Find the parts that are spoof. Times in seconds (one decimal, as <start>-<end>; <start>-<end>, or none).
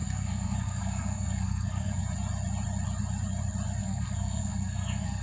0.0-2.0; 3.8-5.2